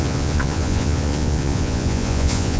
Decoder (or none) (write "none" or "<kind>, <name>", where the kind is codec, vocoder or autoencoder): vocoder, Vocos